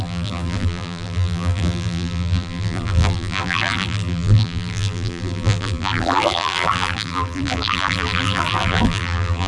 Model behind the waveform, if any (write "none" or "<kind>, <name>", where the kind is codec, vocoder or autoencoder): vocoder, BigVGAN v2